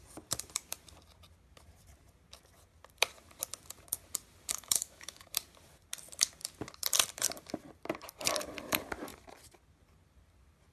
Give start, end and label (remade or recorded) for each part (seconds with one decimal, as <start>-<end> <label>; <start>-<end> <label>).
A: 0.0-4.5 recorded; 4.5-5.3 remade; 5.3-10.7 recorded